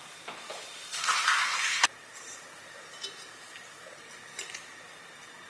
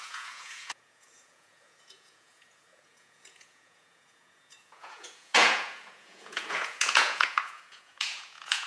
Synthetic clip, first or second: second